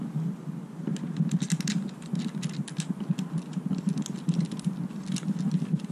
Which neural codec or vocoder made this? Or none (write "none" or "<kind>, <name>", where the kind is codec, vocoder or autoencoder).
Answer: none